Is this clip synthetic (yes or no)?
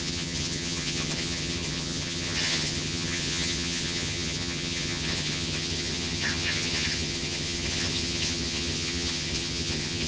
yes